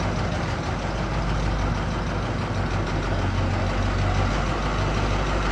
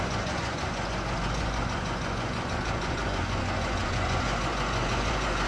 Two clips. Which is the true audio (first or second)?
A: first